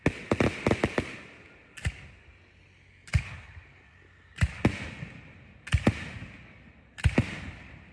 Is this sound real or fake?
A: real